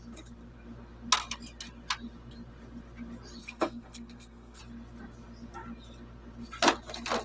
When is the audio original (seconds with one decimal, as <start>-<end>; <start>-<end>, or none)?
0.0-3.4; 4.6-7.2